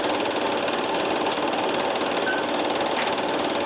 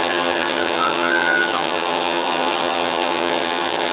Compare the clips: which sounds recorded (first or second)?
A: first